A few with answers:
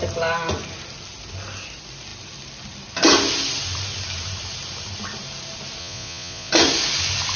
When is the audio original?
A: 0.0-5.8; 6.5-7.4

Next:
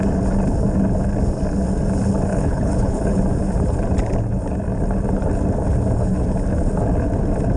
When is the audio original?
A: 0.0-2.3; 3.2-7.6